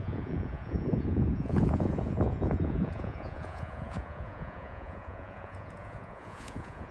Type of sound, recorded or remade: remade